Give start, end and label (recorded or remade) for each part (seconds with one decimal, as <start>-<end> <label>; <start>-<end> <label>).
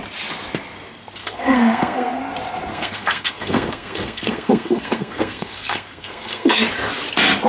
0.0-1.2 recorded; 1.2-2.2 remade; 2.2-2.7 recorded; 2.7-6.6 remade; 6.6-7.5 recorded